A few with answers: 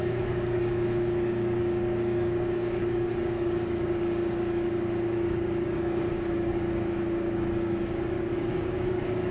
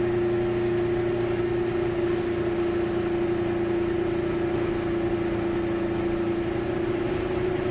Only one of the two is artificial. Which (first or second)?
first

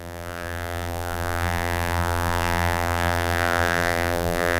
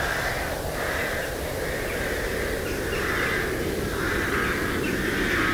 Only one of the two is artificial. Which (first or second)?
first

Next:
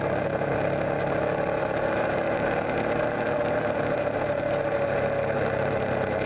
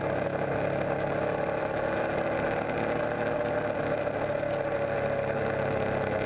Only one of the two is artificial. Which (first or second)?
first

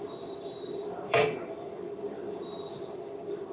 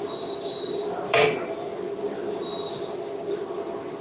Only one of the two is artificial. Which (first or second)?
first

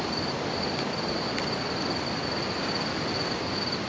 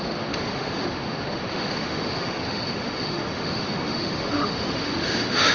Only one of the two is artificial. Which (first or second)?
second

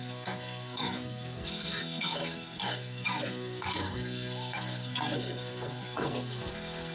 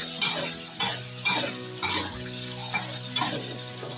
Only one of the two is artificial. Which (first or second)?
first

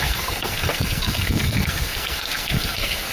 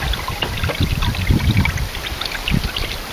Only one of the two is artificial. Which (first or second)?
first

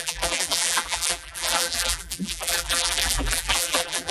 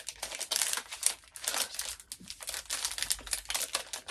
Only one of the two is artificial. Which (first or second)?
first